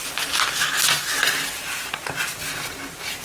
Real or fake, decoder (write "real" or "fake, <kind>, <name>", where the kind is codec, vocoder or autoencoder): real